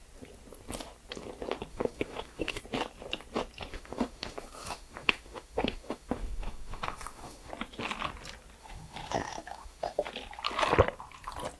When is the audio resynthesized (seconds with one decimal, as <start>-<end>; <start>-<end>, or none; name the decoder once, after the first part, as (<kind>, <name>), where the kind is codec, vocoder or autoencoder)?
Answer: 1.7-2.6 (autoencoder, DAC-VAE); 3.7-7.5; 8.6-10.1